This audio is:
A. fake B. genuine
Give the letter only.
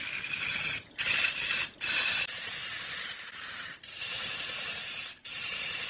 A